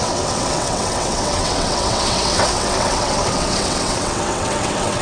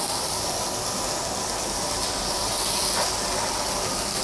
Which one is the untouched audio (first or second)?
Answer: second